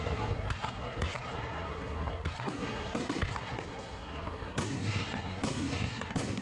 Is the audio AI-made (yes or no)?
yes